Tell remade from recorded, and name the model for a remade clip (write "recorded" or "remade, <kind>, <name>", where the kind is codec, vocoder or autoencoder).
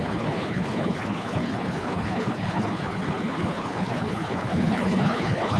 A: remade, codec, HILCodec